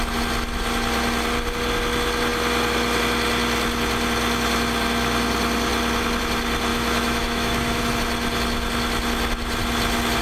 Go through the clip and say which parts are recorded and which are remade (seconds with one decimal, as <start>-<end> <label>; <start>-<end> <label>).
0.0-6.7 recorded; 6.7-7.8 remade; 7.8-10.2 recorded